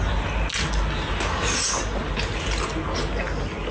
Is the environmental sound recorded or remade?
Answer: recorded